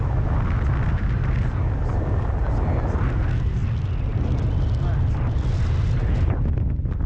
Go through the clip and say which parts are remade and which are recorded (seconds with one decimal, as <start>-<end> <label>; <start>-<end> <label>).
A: 0.0-7.1 recorded